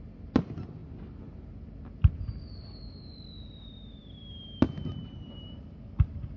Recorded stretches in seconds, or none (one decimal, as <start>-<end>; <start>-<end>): 0.0-6.4